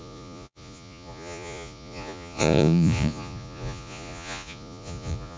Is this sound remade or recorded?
remade